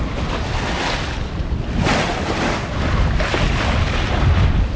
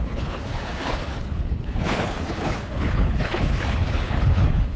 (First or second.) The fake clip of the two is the second